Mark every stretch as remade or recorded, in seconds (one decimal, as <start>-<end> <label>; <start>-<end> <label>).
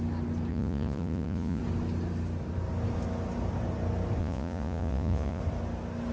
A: 0.0-0.5 recorded; 0.5-1.6 remade; 1.6-4.2 recorded; 4.2-5.4 remade; 5.4-6.1 recorded